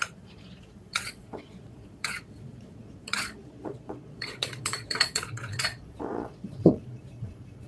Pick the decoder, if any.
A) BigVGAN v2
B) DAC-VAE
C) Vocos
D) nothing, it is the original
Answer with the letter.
C